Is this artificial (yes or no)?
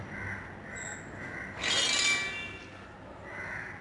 no